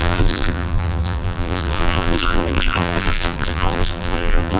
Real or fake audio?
fake